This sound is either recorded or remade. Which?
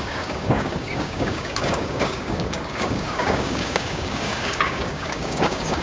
remade